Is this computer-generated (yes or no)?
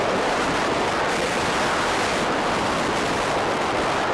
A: no